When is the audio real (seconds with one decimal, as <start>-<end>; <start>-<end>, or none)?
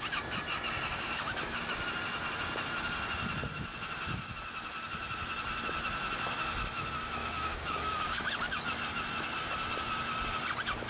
0.0-0.9; 1.6-7.2; 8.3-10.9